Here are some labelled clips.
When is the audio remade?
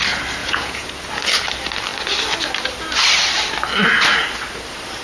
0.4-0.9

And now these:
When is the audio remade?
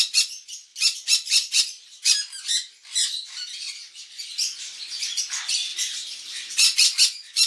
0.7-5.2